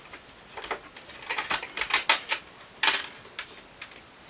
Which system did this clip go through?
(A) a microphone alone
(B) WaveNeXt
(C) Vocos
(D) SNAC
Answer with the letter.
A